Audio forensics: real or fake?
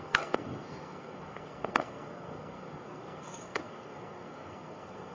fake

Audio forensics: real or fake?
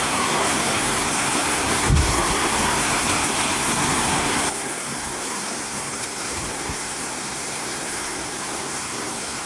fake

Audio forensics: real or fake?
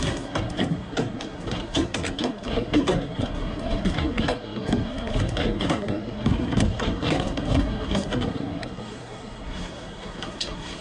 fake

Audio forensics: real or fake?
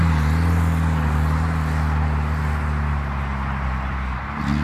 real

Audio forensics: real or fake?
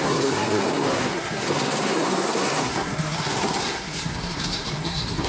fake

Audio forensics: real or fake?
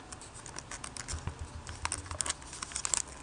real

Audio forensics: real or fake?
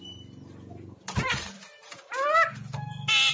real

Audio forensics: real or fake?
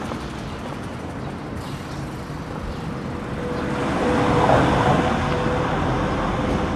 real